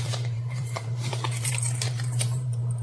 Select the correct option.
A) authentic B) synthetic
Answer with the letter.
B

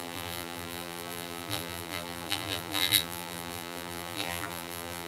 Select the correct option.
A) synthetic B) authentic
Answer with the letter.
A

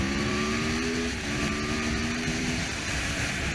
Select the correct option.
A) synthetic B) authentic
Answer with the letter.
A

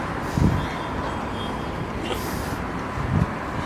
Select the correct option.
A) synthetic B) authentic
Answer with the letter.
B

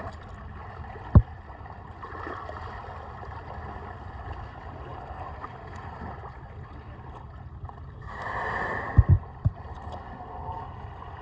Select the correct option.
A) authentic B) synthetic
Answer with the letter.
A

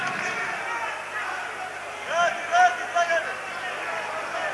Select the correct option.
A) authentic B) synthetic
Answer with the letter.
A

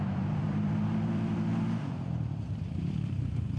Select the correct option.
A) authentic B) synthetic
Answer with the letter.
B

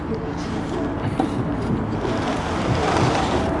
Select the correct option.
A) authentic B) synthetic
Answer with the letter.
B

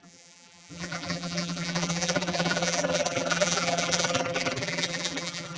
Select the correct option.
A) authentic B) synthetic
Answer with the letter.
B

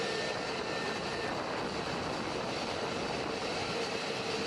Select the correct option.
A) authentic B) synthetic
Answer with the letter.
A